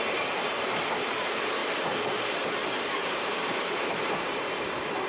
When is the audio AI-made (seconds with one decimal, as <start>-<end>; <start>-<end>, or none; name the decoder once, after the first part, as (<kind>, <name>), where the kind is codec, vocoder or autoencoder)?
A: 0.0-5.1 (vocoder, BigVGAN v2)